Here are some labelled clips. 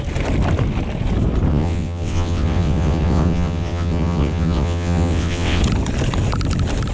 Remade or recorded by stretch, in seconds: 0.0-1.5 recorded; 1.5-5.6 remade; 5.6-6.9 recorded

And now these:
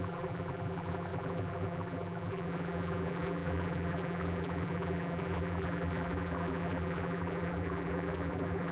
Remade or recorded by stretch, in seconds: 0.0-8.7 remade